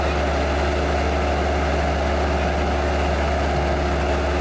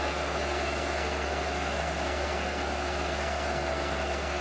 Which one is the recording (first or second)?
first